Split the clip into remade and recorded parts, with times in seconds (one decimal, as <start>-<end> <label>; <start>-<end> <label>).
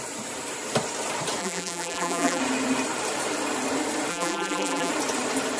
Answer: 0.0-1.4 recorded; 1.4-2.4 remade; 2.4-4.1 recorded; 4.1-4.9 remade; 4.9-5.6 recorded